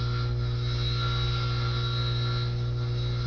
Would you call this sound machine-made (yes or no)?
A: no